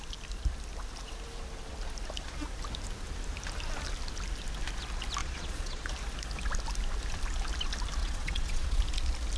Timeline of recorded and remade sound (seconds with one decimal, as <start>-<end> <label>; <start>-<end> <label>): 0.0-5.2 recorded; 5.2-5.9 remade; 5.9-8.0 recorded; 8.0-8.8 remade; 8.8-9.4 recorded